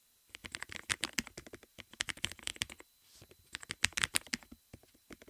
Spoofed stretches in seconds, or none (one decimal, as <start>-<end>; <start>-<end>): 0.0-2.5; 4.6-5.3